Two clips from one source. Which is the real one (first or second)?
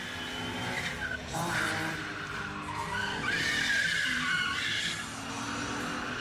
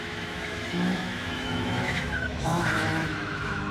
first